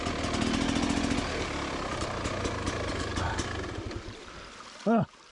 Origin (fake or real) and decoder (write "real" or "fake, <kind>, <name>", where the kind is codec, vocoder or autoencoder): real